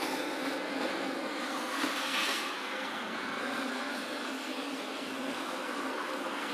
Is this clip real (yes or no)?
no